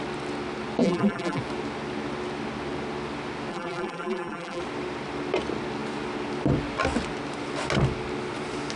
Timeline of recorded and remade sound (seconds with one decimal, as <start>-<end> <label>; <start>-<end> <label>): 0.0-0.8 recorded; 0.8-1.4 remade; 1.4-3.5 recorded; 3.5-4.6 remade; 4.6-8.8 recorded